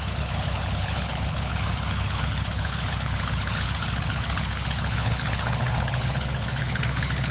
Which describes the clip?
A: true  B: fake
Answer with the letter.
B